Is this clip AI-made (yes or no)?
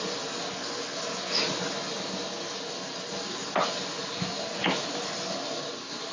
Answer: no